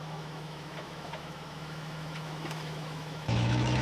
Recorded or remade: remade